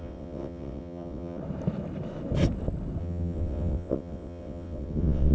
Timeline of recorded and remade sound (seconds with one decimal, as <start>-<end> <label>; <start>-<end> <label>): 0.0-1.4 remade; 1.4-3.0 recorded; 3.0-5.3 remade